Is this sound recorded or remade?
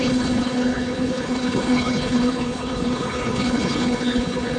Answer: remade